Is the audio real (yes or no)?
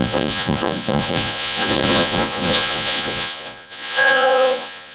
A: no